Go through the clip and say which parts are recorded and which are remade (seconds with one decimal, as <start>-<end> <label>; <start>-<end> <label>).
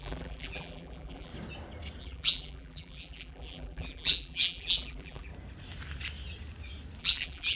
0.0-1.3 remade; 1.3-2.0 recorded; 2.0-5.3 remade; 5.3-7.0 recorded; 7.0-7.6 remade